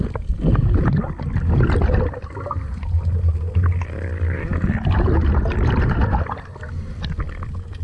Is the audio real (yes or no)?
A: yes